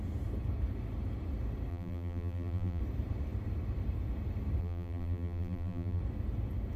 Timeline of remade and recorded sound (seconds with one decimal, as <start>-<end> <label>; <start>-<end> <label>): 0.0-1.7 recorded; 1.7-2.8 remade; 2.8-4.6 recorded; 4.6-6.0 remade; 6.0-6.8 recorded